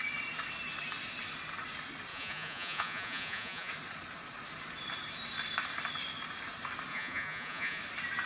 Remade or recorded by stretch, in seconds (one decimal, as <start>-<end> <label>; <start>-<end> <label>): 0.0-2.1 recorded; 2.1-3.7 remade; 3.7-6.9 recorded; 6.9-7.8 remade; 7.8-8.3 recorded